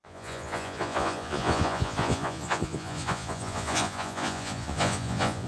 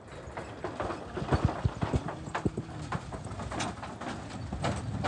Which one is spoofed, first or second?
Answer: first